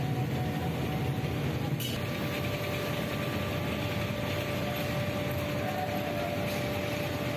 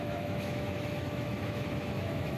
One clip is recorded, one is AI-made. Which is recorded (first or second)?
first